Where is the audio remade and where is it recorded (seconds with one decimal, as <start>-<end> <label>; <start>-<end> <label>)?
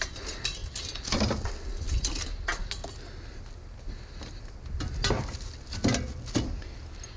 0.0-7.2 recorded